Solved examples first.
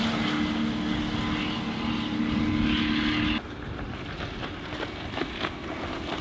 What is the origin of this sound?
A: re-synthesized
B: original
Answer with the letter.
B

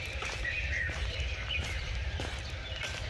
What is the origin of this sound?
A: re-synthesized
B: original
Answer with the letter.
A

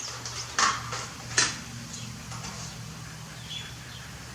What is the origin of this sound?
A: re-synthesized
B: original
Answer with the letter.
B